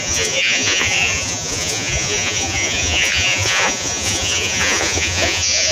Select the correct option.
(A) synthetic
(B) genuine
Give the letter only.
A